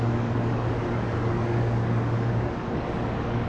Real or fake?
fake